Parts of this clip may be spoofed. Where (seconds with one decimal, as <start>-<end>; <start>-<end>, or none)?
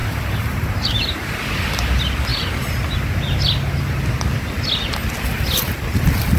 0.0-1.4